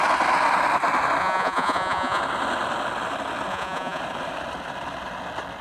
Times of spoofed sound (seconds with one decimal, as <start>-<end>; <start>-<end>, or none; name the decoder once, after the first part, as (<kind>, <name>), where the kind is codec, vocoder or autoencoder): 1.2-2.2 (vocoder, Vocos); 3.5-4.0